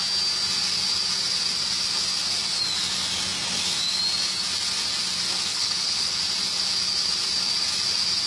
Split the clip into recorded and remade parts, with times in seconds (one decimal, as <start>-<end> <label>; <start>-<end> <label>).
0.0-5.5 recorded; 5.5-6.2 remade; 6.2-8.3 recorded